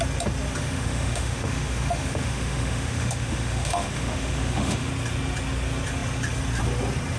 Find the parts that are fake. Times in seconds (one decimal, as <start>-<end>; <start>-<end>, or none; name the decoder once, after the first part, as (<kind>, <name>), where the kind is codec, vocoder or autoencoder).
0.6-4.9 (autoencoder, DAC-VAE)

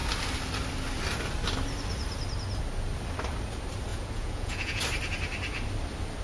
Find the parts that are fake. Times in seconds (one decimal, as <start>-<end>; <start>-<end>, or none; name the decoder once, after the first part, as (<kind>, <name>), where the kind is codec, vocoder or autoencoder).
3.9-4.8 (vocoder, Vocos)

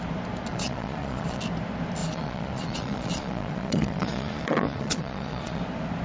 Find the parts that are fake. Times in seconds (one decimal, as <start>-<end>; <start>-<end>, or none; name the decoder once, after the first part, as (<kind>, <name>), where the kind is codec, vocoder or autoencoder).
0.5-1.4 (vocoder, Vocos); 2.0-5.6

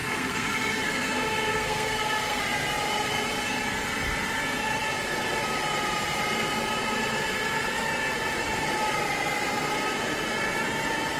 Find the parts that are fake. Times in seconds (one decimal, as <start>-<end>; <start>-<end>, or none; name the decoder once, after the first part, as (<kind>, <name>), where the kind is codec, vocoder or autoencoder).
0.0-2.4 (codec, SNAC)

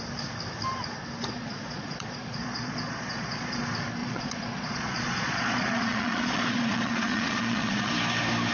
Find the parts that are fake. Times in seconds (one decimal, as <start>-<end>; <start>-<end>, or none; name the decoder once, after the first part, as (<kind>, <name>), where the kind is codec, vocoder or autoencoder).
1.2-3.6 (vocoder, Vocos); 4.0-7.9

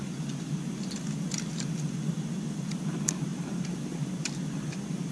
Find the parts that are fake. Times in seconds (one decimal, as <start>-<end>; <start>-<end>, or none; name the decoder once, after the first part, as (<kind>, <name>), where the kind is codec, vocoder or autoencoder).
none